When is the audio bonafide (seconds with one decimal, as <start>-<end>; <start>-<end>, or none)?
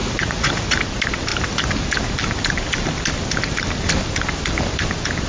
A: 0.8-5.3